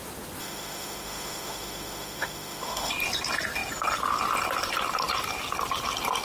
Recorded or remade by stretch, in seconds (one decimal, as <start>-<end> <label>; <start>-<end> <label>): 0.0-0.4 recorded; 0.4-2.9 remade; 2.9-6.2 recorded